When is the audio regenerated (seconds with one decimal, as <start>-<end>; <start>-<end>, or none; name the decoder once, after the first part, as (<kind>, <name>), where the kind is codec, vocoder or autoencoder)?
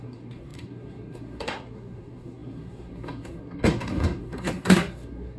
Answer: 0.0-5.4 (codec, SNAC)